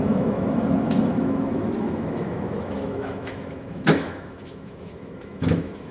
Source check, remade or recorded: remade